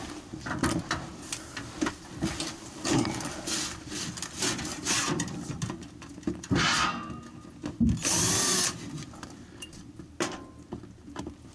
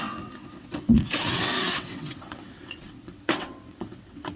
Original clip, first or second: first